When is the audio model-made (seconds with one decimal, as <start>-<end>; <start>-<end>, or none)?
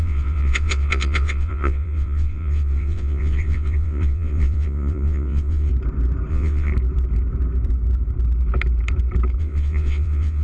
0.0-5.7; 6.3-6.7; 9.4-10.4